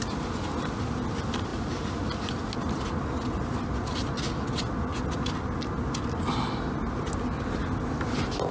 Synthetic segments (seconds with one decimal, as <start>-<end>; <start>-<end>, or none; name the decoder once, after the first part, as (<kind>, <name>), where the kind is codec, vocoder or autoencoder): none